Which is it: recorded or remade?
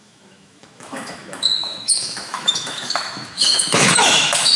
remade